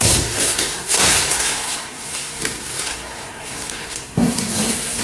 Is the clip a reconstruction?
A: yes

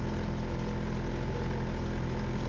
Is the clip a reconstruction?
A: no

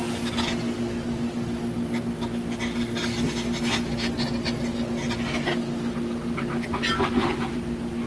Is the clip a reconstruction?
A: no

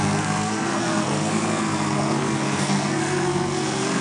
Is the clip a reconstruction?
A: yes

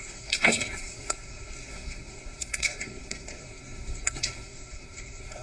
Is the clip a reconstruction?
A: yes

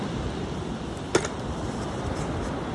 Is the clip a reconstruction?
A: no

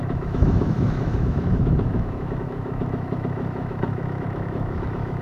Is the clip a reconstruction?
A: yes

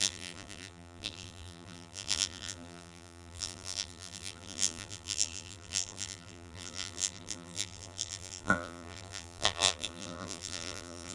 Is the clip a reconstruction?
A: yes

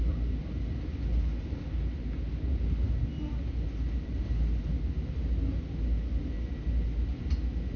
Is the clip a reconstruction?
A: no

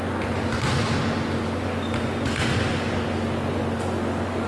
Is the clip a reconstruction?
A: no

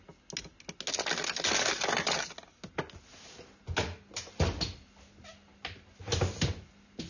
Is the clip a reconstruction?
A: no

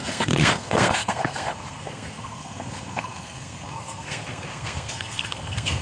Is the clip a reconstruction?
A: yes